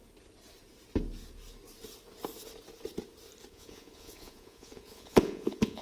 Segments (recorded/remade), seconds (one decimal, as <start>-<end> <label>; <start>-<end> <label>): 0.0-3.5 recorded; 3.5-5.8 remade